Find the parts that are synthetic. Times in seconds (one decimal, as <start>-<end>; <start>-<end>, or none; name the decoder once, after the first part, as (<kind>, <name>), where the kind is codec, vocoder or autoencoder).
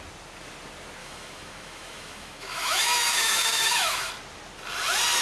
1.0-4.1 (autoencoder, DAC-VAE)